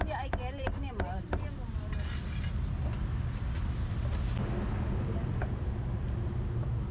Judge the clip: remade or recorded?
recorded